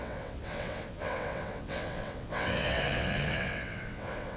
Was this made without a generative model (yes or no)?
no